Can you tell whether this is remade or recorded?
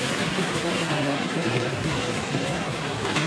remade